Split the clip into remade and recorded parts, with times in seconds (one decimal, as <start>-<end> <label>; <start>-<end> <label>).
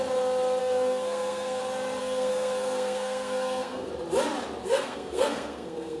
0.0-0.6 recorded; 0.6-1.6 remade; 1.6-2.0 recorded; 2.0-3.9 remade; 3.9-4.6 recorded; 4.6-6.0 remade